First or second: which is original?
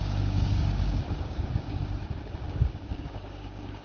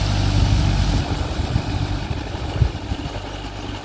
second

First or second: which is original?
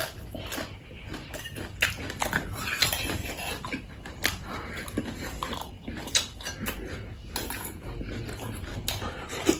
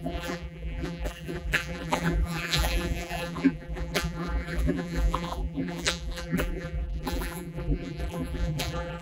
first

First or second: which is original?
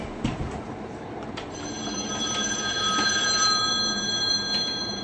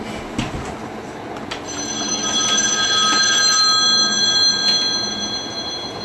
second